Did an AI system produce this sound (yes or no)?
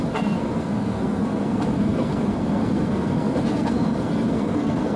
yes